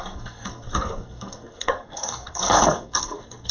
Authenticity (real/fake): fake